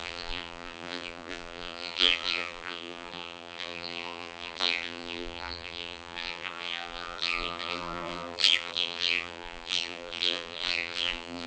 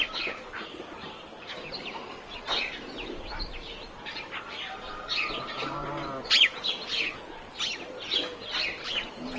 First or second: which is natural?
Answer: second